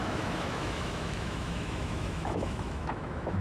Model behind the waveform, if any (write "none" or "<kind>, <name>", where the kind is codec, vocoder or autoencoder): autoencoder, DAC-VAE